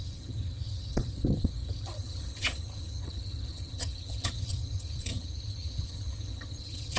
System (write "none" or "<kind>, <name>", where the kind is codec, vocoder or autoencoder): vocoder, HiFi-GAN